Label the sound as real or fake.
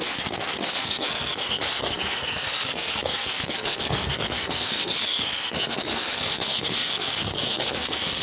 fake